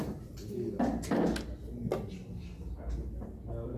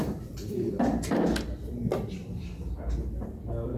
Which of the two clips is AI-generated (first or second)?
second